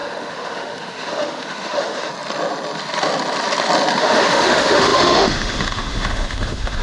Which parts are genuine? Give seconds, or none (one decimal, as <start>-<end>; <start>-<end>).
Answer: 2.1-4.0